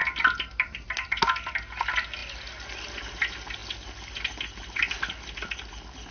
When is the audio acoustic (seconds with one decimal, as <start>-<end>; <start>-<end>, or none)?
1.5-6.1

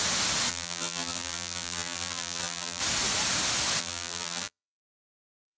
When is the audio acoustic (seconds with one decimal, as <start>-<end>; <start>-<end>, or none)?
0.0-0.5; 2.8-3.8

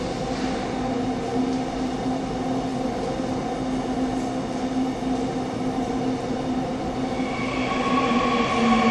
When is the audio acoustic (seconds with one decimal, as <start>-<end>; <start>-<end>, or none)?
0.0-8.9

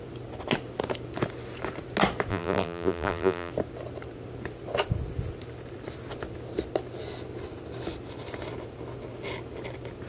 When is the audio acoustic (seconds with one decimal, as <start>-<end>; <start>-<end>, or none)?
0.0-2.3; 3.5-10.1

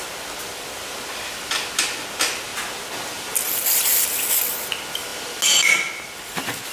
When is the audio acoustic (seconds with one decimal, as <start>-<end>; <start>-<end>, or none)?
0.0-6.7

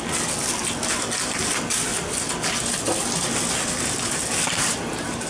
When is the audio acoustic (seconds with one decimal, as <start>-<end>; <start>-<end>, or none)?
0.0-5.3